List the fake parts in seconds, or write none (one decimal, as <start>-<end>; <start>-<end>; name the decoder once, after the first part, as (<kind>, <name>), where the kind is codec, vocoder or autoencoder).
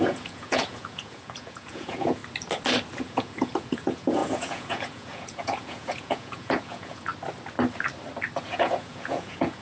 0.0-2.2 (vocoder, Vocos); 3.0-7.1; 8.4-9.6